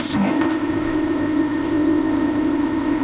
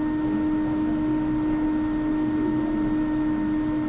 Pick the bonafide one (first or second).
second